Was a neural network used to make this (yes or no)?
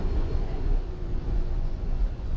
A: yes